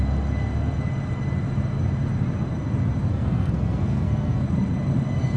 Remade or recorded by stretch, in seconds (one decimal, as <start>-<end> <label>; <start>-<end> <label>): 0.0-3.1 recorded; 3.1-4.4 remade; 4.4-5.4 recorded